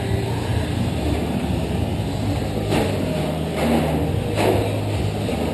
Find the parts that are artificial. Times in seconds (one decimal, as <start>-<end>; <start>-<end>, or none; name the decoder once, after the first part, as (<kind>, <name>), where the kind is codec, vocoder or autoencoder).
0.5-3.8 (vocoder, BigVGAN v2)